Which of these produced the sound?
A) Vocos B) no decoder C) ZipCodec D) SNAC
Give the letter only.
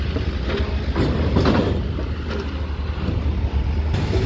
B